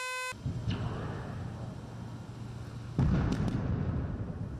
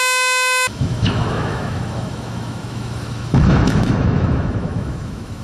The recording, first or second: first